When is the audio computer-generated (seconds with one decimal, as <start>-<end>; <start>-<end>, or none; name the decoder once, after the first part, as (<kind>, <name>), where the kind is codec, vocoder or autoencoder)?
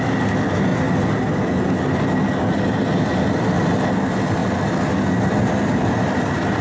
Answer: none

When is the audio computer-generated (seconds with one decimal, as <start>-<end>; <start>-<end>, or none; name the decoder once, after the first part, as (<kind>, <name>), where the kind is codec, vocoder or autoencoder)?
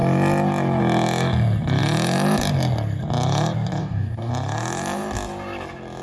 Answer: 3.8-4.3 (codec, DAC)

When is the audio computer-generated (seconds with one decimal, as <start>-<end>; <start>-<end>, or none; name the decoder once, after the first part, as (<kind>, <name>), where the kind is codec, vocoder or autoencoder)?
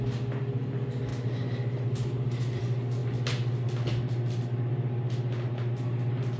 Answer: none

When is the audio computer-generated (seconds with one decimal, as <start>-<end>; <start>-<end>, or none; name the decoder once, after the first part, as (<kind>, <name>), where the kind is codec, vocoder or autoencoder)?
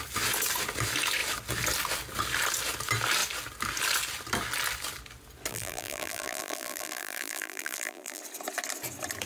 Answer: 5.5-8.2 (vocoder, BigVGAN v2)